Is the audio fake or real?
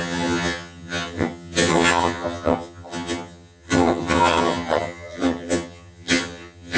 fake